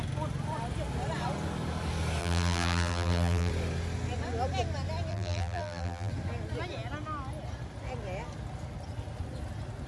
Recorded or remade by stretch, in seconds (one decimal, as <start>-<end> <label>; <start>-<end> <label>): 0.0-2.2 recorded; 2.2-3.5 remade; 3.5-5.1 recorded; 5.1-6.1 remade; 6.1-9.9 recorded